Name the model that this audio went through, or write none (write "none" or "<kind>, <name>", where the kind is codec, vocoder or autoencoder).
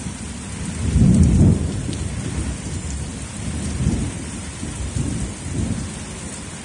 vocoder, BigVGAN v2